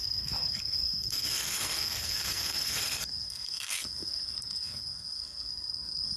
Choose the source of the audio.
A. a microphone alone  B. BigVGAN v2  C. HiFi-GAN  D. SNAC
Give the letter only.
D